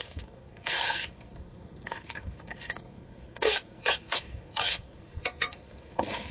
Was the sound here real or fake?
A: fake